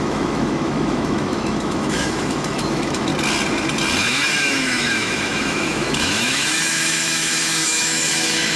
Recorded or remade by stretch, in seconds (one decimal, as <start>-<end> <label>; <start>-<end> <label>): 0.0-3.1 remade; 3.1-4.0 recorded; 4.0-8.6 remade